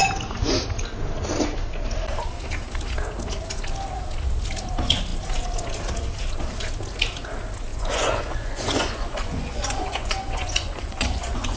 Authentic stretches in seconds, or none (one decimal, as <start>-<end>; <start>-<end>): 0.0-7.7